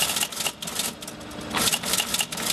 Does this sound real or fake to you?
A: real